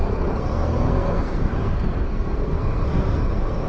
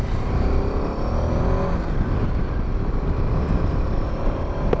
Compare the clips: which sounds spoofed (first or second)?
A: first